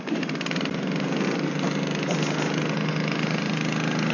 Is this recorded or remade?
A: recorded